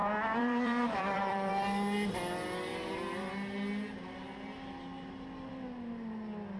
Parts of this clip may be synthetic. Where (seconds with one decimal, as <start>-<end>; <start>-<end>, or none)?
0.0-1.5